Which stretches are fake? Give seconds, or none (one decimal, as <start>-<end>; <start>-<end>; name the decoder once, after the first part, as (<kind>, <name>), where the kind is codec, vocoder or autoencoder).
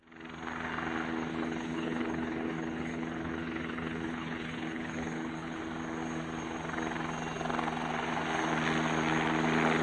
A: 1.3-5.6 (codec, HILCodec)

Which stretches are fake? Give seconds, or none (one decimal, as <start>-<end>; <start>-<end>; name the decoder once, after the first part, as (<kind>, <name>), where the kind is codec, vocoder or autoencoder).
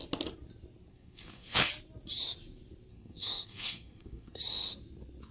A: 0.9-1.7 (codec, SNAC); 2.9-4.4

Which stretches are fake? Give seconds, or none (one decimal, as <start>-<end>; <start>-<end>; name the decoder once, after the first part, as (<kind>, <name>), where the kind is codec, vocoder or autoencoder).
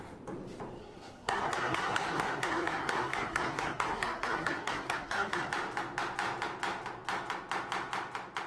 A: 0.8-5.5 (codec, SNAC)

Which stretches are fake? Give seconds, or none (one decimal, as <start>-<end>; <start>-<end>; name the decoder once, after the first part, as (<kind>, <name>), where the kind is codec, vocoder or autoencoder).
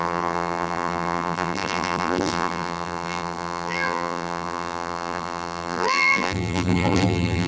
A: 0.0-7.5 (vocoder, BigVGAN v2)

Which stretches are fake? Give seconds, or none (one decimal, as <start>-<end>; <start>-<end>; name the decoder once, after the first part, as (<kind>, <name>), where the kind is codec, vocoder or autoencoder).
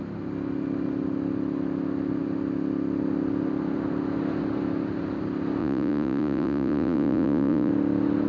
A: 5.6-7.7 (vocoder, Vocos)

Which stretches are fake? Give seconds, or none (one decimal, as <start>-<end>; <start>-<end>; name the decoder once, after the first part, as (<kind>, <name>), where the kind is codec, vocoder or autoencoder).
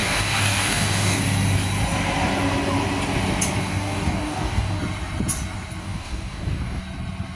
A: 0.0-1.2 (codec, DAC); 3.6-4.8; 5.8-6.8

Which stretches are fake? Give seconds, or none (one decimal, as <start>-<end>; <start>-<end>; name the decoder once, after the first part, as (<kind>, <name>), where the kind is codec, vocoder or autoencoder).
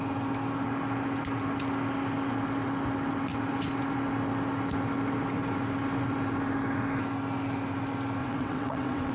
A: 8.2-9.1 (vocoder, WaveNeXt)